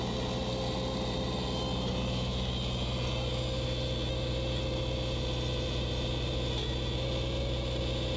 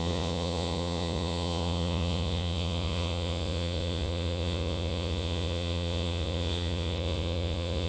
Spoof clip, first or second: second